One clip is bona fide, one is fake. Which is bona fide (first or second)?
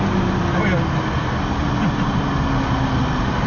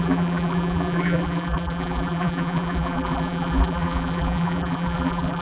first